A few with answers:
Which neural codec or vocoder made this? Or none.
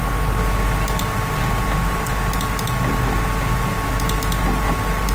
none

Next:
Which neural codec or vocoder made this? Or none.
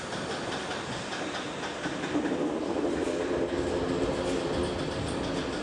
none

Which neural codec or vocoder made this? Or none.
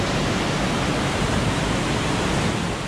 none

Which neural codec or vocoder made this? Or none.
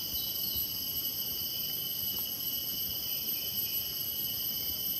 none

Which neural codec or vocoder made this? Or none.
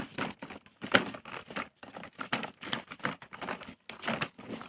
none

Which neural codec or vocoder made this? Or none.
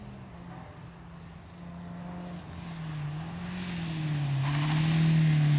none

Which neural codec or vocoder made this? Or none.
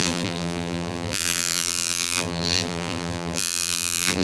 vocoder, BigVGAN v2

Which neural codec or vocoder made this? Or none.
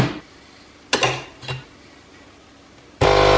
none